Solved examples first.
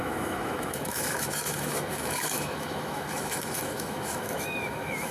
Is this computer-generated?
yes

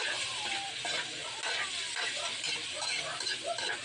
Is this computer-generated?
no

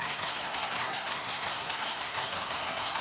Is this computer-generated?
yes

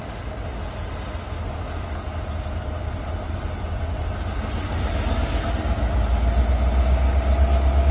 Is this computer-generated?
no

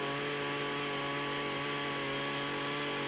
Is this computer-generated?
no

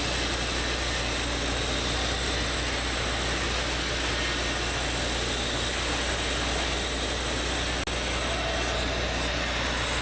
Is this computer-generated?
no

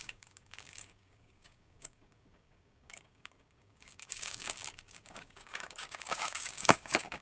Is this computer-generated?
yes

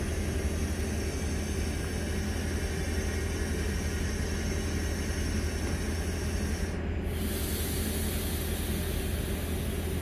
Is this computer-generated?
no